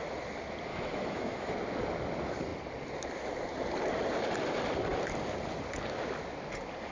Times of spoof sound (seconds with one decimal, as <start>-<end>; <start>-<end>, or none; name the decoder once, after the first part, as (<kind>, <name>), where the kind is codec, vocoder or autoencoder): 0.7-1.5 (autoencoder, DAC-VAE)